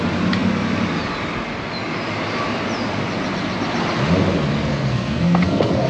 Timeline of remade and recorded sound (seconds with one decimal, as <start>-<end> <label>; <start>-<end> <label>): 0.0-4.7 recorded; 4.7-5.9 remade